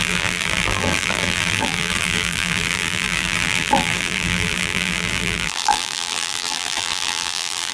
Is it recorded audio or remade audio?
remade